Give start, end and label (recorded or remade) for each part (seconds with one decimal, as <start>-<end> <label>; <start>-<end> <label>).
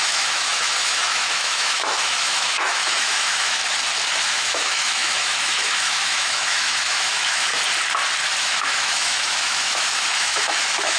0.0-3.6 remade; 3.6-4.3 recorded; 4.3-7.5 remade; 7.5-8.4 recorded; 8.4-11.0 remade